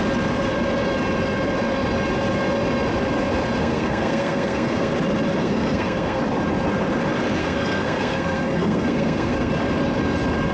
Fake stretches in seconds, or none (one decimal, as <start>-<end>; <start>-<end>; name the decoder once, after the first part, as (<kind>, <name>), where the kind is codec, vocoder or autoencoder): 3.6-4.9 (codec, SNAC); 5.4-6.2; 7.4-9.5